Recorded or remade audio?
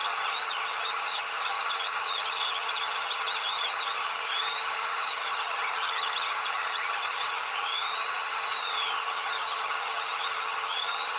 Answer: remade